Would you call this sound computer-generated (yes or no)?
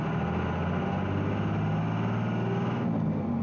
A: no